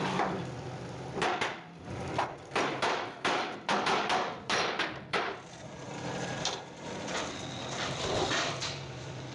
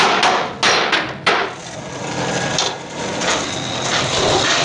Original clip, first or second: second